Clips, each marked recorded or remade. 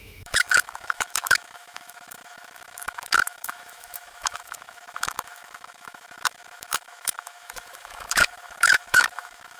remade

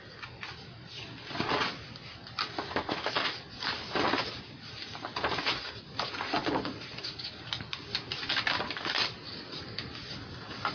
recorded